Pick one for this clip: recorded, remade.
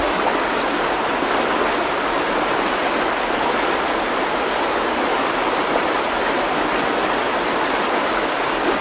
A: recorded